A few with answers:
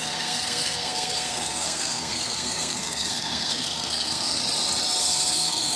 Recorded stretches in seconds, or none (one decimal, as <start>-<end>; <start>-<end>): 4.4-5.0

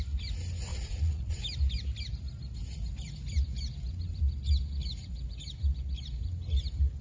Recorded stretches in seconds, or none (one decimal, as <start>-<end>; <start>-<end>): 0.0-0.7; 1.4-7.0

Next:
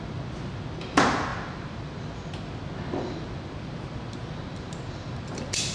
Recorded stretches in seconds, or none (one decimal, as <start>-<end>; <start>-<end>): 0.0-5.7

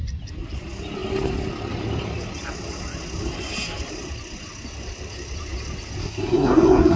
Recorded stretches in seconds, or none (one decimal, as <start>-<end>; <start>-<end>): 0.0-6.0

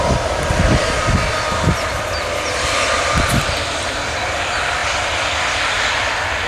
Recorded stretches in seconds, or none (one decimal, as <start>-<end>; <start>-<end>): 0.0-6.5

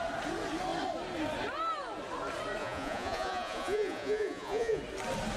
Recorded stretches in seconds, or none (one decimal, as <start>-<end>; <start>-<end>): 0.0-2.6; 4.8-5.4